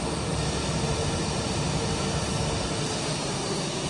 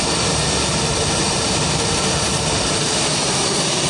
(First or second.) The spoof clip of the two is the second